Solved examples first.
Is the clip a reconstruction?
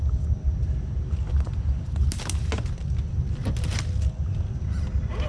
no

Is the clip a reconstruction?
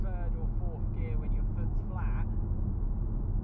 no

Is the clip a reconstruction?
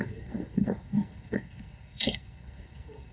yes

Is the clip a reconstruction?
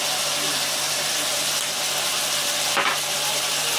no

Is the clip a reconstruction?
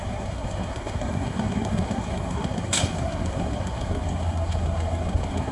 yes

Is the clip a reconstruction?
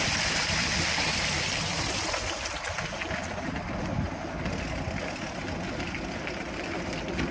no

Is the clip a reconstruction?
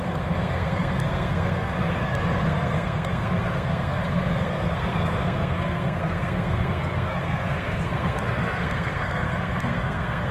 yes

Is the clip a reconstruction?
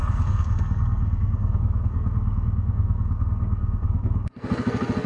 yes